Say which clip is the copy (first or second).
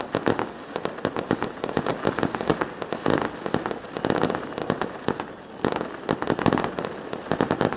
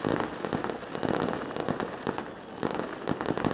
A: first